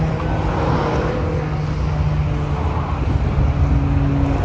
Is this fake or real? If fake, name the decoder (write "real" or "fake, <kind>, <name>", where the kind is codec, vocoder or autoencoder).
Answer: real